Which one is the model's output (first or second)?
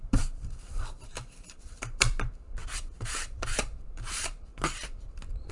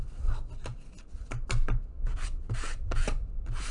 first